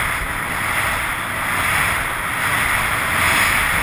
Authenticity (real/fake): real